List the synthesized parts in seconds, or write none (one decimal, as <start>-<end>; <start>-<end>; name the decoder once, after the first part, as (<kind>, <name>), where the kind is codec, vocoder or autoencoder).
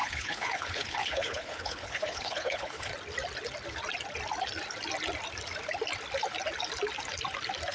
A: 0.0-2.9 (codec, HILCodec)